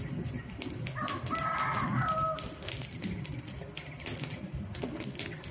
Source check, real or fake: real